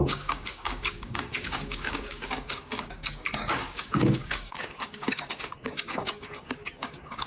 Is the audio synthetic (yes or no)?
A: yes